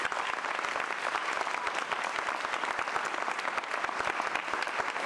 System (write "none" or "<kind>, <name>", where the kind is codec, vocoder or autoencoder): none